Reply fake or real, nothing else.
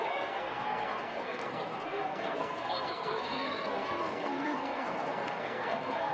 fake